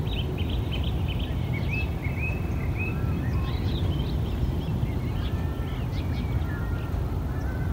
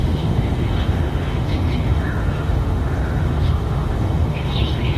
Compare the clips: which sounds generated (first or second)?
second